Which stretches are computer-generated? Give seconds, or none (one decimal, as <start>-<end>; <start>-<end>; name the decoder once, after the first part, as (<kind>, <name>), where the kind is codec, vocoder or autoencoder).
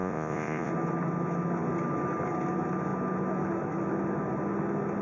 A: 0.0-0.7 (vocoder, Vocos)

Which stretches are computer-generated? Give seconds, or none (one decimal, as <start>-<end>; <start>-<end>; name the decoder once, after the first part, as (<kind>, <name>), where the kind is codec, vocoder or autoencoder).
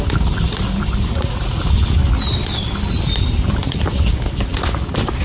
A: 1.1-1.6 (vocoder, Vocos)